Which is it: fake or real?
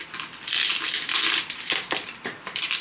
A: real